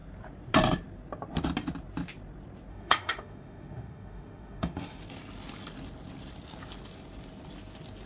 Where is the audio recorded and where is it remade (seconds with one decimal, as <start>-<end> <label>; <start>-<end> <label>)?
0.0-2.7 recorded; 2.7-5.0 remade; 5.0-8.1 recorded